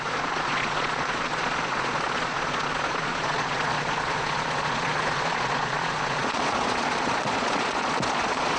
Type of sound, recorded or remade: remade